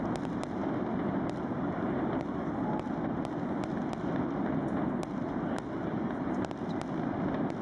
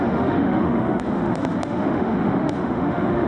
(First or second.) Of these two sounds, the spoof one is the second